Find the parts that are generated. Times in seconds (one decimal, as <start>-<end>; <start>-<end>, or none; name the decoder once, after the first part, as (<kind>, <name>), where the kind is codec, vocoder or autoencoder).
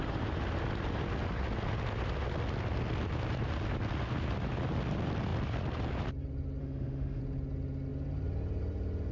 6.6-7.2 (autoencoder, DAC-VAE)